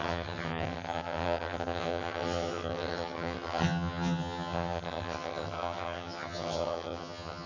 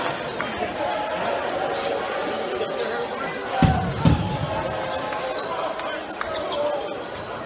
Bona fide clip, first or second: second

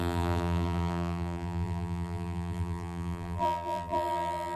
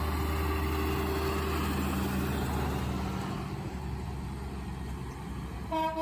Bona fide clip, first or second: second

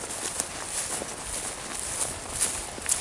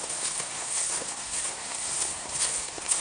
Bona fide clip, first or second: first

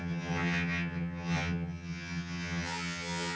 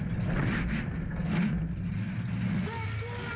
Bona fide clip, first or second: second